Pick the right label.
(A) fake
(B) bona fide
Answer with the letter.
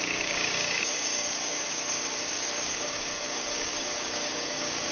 A